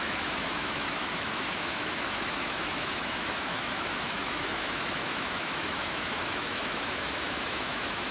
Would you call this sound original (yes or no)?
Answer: no